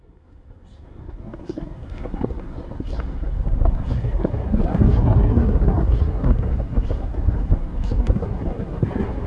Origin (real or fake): fake